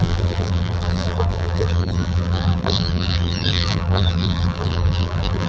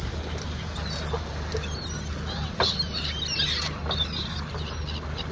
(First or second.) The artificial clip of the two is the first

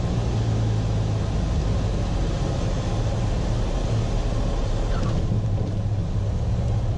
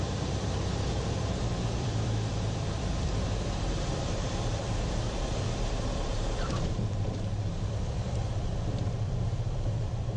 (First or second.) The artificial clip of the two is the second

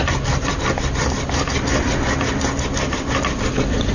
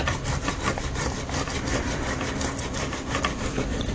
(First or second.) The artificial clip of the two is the second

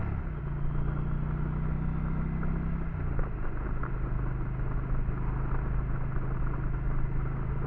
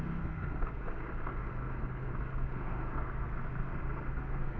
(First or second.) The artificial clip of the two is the second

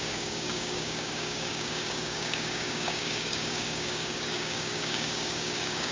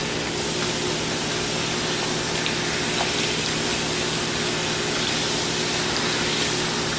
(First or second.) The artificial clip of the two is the first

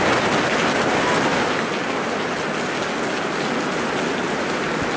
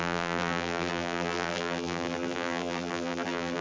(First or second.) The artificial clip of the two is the second